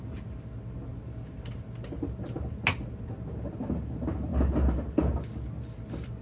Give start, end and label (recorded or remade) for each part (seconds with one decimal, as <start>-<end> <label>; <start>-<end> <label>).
0.0-6.2 recorded

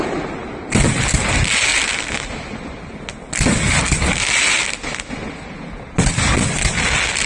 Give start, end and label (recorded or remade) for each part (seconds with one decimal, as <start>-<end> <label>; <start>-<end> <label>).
0.0-7.3 recorded

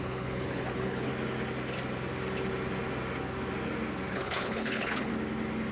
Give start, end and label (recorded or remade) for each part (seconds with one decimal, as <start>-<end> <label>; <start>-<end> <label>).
0.0-1.1 remade; 1.1-4.1 recorded; 4.1-5.1 remade; 5.1-5.7 recorded